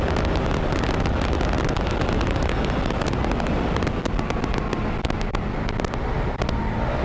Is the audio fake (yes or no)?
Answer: no